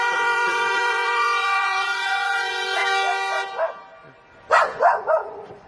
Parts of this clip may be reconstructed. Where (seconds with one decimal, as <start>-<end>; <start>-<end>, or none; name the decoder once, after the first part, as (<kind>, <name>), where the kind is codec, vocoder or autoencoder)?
0.0-2.8 (vocoder, Vocos); 4.5-5.7